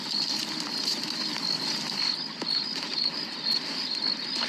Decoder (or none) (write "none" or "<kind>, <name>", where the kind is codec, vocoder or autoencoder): none